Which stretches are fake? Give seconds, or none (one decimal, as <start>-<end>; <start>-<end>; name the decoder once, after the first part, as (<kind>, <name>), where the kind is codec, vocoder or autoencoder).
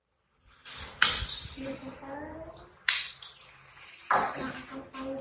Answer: none